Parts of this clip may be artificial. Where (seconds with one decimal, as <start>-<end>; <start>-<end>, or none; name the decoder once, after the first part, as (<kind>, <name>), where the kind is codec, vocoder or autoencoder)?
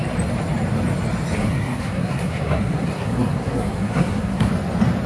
1.4-4.5 (codec, SNAC)